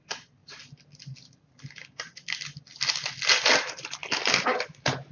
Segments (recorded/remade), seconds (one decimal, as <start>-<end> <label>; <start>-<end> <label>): 0.0-5.1 recorded